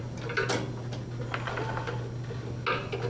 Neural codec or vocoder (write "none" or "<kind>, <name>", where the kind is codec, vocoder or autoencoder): none